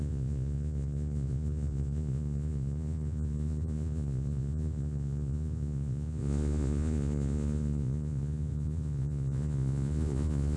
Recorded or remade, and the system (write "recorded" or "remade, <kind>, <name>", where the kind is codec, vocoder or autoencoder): remade, vocoder, Vocos